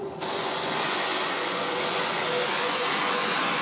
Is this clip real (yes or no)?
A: no